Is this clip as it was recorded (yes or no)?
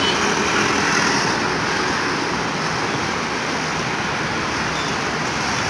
yes